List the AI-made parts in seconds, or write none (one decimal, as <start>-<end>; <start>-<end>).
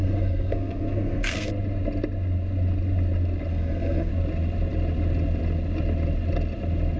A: 0.0-1.5; 3.5-4.1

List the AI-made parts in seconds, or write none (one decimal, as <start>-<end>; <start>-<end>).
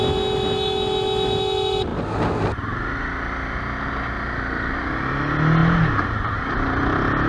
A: none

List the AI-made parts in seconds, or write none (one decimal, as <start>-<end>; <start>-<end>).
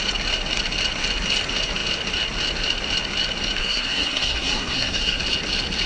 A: 3.6-5.2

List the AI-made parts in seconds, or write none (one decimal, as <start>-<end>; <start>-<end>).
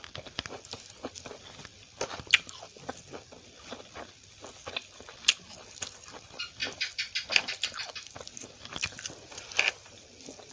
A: none